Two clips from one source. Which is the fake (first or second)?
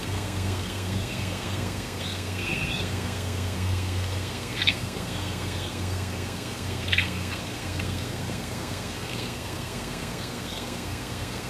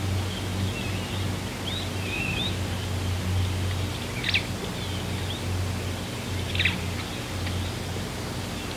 first